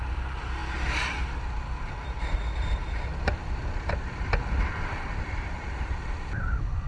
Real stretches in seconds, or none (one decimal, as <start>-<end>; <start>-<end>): 0.6-1.7